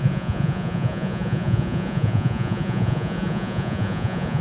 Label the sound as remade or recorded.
remade